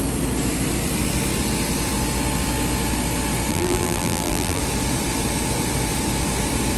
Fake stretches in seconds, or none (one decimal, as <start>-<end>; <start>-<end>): 3.5-4.6